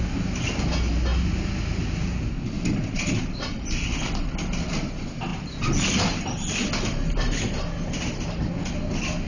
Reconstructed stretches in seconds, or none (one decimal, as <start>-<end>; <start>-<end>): none